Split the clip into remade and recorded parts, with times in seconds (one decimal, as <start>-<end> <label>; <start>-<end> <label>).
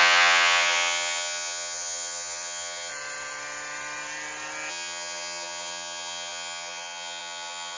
0.0-2.9 remade; 2.9-4.7 recorded; 4.7-7.8 remade